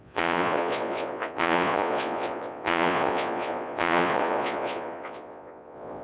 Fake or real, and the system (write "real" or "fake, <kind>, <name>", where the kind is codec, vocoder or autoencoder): fake, vocoder, Vocos